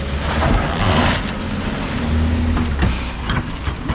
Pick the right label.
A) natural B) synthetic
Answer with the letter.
A